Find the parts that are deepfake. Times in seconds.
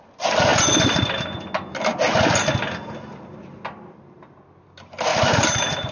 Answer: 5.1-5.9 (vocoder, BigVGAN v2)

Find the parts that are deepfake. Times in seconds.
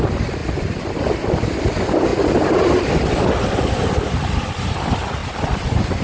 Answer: none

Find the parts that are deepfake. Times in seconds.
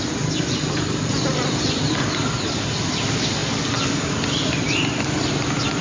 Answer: none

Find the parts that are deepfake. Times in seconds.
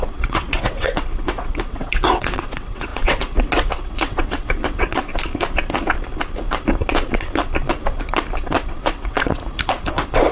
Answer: 0.0-5.1 (vocoder, WaveNeXt); 8.5-9.4; 9.9-10.3